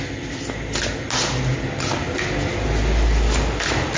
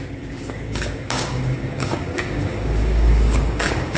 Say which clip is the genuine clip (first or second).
first